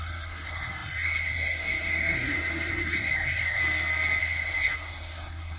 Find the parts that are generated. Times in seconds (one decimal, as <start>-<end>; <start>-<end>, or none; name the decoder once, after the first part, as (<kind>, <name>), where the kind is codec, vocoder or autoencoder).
0.0-3.6 (codec, SNAC); 4.2-5.6

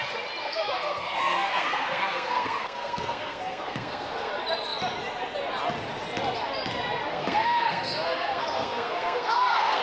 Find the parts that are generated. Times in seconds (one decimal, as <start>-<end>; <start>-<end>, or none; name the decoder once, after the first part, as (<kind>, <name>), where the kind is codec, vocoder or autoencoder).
0.4-4.3 (codec, SNAC); 7.1-9.8

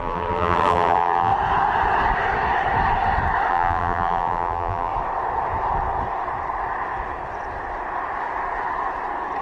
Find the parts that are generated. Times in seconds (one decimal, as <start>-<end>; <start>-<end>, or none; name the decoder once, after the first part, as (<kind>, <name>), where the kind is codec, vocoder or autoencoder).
0.0-1.3 (vocoder, BigVGAN v2); 3.5-4.9

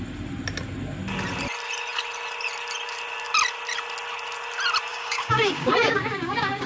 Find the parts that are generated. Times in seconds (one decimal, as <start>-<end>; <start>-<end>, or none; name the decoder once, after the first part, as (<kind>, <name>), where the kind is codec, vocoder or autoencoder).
4.9-6.7 (codec, DAC)

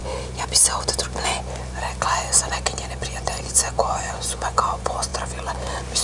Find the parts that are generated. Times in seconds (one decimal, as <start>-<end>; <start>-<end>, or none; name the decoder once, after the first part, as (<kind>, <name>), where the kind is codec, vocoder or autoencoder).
3.0-5.1 (vocoder, Vocos)